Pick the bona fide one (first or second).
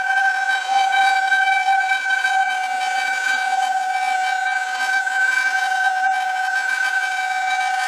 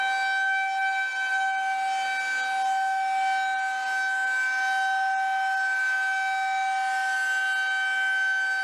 second